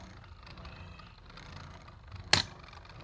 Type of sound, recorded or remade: recorded